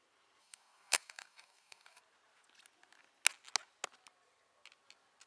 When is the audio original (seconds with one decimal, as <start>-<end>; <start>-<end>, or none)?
0.0-0.4; 2.0-5.3